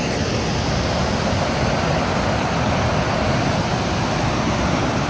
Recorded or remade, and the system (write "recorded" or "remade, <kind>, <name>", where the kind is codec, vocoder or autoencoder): recorded